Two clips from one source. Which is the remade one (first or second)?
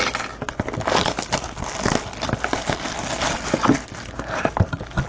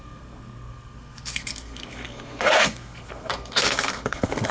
second